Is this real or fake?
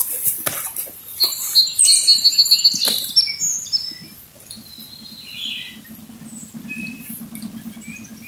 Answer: real